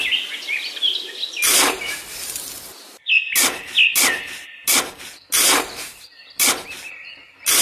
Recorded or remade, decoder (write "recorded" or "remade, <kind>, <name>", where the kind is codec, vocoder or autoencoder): recorded